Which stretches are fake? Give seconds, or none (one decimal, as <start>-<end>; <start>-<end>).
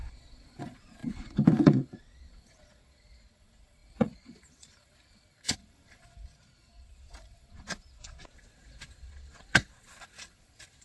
0.0-10.8